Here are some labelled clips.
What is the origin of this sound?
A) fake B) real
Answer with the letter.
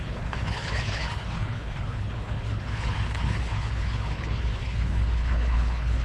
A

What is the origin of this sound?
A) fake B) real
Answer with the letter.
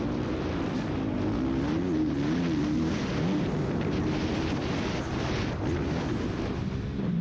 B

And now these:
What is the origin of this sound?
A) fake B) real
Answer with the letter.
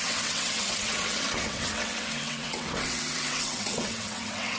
A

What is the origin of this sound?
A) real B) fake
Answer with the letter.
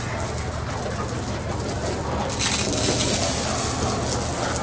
A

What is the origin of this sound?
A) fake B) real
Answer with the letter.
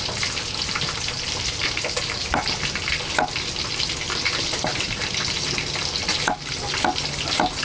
B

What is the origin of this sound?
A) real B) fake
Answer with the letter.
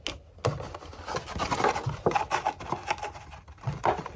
A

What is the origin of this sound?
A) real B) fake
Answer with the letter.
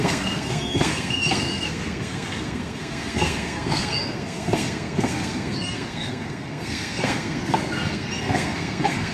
B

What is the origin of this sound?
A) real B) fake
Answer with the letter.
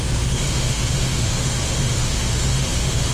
B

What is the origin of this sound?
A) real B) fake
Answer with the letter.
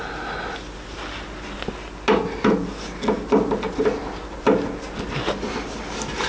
A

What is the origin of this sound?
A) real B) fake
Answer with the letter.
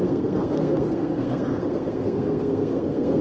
B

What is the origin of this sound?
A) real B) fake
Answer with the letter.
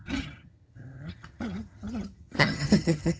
B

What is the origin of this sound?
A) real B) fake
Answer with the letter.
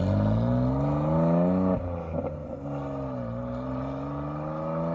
A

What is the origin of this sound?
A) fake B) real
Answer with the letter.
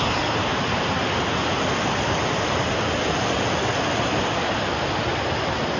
B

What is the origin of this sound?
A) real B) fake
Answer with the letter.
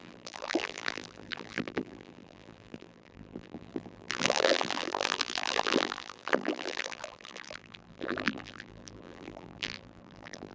B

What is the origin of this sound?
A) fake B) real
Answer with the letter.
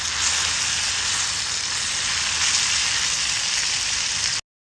B